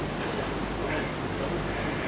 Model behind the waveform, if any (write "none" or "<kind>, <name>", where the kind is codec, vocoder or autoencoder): none